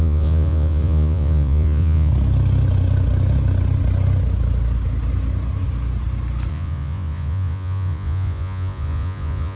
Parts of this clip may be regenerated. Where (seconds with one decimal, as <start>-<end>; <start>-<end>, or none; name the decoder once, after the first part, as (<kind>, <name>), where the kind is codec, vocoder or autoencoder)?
0.0-2.1 (vocoder, Vocos); 6.5-9.6